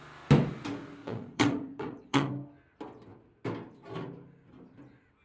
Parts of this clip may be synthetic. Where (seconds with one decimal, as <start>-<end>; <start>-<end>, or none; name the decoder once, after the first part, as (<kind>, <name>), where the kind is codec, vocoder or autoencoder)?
1.0-2.3 (vocoder, Vocos)